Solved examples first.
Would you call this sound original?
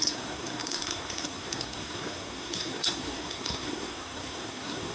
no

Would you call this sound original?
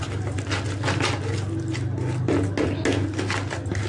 yes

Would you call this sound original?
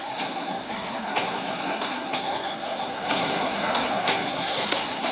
no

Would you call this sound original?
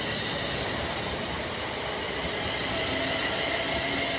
yes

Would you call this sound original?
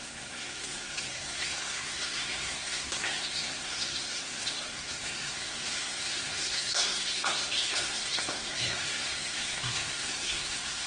no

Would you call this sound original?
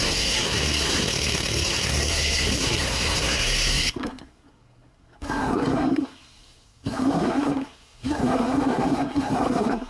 no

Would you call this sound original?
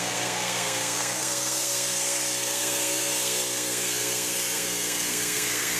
no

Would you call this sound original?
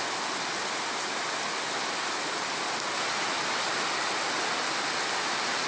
yes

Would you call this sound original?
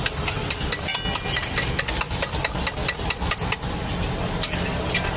yes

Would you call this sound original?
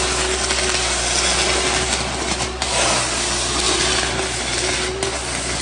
yes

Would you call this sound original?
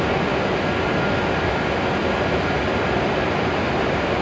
yes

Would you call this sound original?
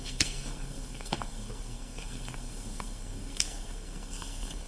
no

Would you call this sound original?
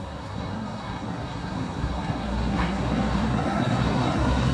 no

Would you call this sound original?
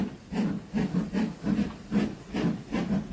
yes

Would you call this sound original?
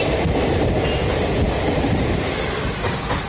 yes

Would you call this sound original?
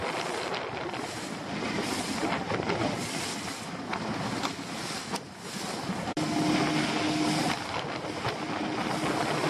yes